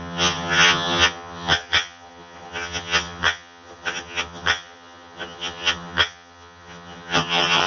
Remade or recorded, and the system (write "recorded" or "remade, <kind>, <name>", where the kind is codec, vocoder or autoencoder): remade, vocoder, HiFi-GAN